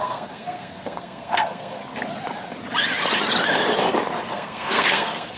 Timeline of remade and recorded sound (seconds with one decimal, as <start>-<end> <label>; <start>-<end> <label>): 0.0-1.8 remade; 1.8-4.3 recorded; 4.3-5.4 remade